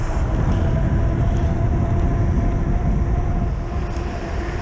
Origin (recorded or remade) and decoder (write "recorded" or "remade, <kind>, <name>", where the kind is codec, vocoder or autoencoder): recorded